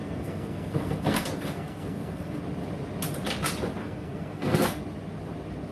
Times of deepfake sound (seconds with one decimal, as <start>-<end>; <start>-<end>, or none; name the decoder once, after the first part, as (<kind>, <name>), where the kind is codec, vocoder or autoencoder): 0.0-2.4 (codec, SNAC); 3.8-4.8